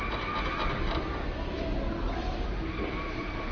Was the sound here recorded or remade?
recorded